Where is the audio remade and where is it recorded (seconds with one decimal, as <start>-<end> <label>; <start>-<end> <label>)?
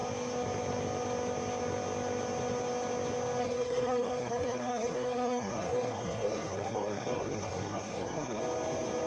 0.0-3.4 recorded; 3.4-8.4 remade; 8.4-9.1 recorded